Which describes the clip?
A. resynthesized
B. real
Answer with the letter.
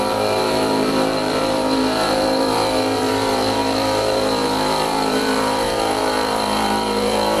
A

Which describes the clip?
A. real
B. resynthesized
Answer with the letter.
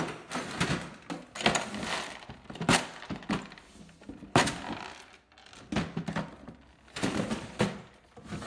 A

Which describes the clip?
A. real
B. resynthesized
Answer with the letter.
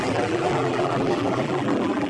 B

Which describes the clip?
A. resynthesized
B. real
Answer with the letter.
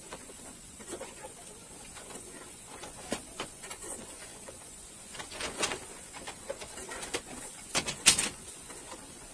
A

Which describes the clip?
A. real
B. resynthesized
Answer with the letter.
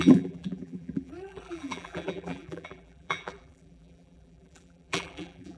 B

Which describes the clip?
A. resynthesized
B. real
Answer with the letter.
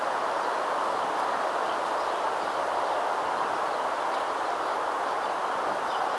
B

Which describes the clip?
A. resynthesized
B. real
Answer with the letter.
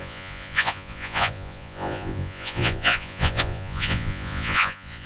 A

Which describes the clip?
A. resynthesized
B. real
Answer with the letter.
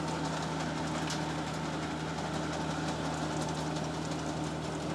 B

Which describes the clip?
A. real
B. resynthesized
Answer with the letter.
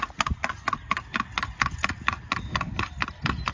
A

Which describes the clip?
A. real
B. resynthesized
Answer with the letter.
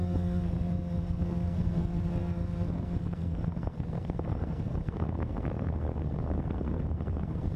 B